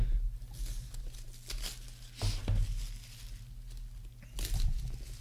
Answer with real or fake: real